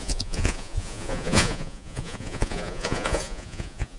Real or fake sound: fake